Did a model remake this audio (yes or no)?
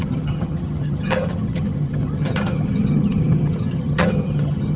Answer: yes